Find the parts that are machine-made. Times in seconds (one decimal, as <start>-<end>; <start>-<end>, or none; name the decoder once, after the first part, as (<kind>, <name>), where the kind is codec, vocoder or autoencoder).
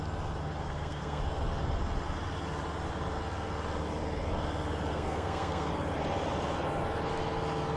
0.6-1.2 (codec, SNAC); 4.9-5.7